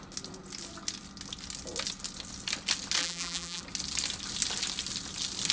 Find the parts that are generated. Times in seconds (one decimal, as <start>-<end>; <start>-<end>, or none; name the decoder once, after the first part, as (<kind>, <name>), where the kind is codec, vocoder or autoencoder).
3.0-3.6 (vocoder, BigVGAN v2)